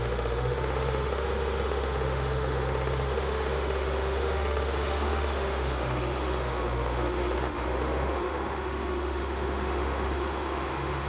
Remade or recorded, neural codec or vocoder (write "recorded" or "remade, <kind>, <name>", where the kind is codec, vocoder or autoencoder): remade, autoencoder, DAC-VAE